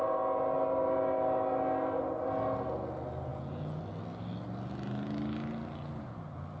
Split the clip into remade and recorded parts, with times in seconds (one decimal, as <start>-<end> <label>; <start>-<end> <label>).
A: 0.0-3.3 recorded; 3.3-3.8 remade; 3.8-6.6 recorded